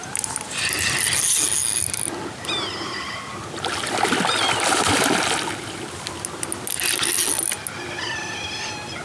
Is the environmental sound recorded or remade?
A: recorded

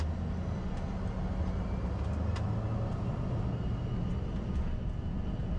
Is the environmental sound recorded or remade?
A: recorded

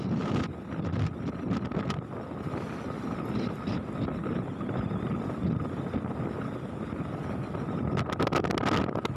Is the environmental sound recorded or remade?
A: recorded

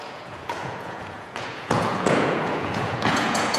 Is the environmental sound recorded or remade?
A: remade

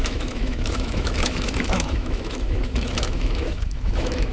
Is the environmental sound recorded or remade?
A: remade